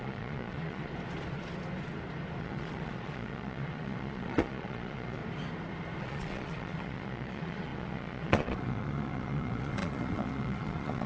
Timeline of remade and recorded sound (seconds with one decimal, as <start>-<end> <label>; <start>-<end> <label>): 0.0-0.9 remade; 0.9-2.4 recorded; 2.4-5.2 remade; 5.2-6.0 recorded; 6.0-11.1 remade